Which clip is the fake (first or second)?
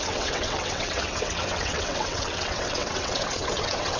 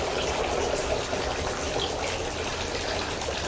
first